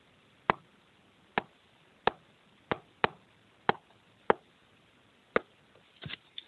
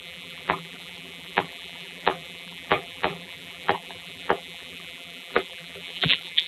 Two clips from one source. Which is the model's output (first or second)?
second